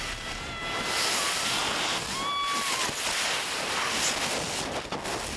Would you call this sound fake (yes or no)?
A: no